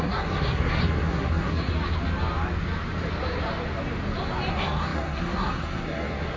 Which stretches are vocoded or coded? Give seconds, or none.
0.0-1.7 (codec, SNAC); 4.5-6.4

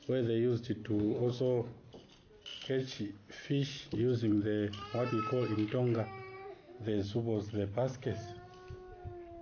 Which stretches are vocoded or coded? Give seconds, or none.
0.8-1.4 (codec, HILCodec)

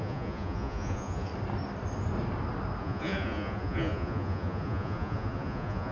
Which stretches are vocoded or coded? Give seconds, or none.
0.0-1.3 (vocoder, Vocos); 2.8-5.9

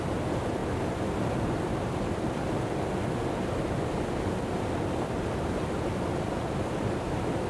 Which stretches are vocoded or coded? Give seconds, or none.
none

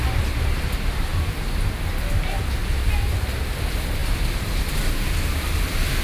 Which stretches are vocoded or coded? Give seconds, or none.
none

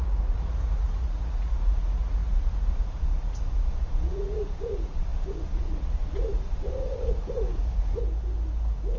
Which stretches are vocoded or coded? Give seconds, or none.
0.0-8.0 (vocoder, Vocos)

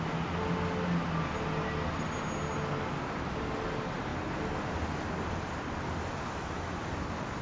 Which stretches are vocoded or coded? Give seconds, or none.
none